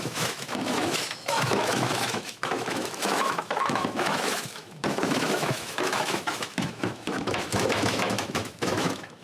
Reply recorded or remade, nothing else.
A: remade